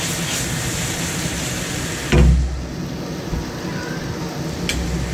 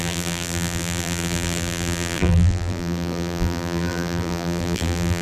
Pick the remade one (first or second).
second